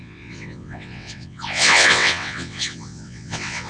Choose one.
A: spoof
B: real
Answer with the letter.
A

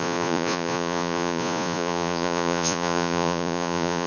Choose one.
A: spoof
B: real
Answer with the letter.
A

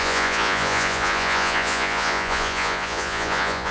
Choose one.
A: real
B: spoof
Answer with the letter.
B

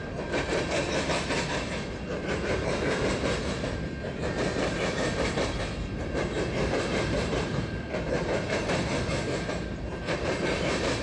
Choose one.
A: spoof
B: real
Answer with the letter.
A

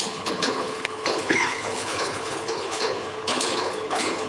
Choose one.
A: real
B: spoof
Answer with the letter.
B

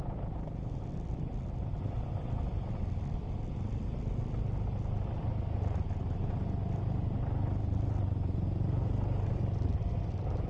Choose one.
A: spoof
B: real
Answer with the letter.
B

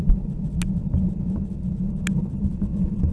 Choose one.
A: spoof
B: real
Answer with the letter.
B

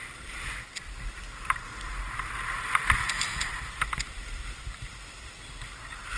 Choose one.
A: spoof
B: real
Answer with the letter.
B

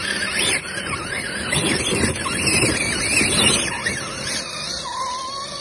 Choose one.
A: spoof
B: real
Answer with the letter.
B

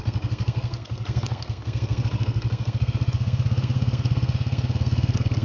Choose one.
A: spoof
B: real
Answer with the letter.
A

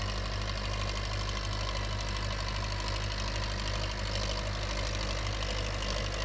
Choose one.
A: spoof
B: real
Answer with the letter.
B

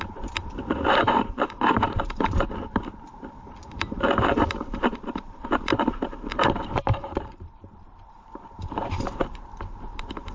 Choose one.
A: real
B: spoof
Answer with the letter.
B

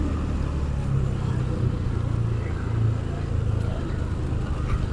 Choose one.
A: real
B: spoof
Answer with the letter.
A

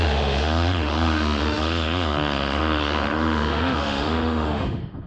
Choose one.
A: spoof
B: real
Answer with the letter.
A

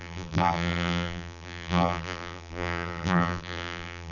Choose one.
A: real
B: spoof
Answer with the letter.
B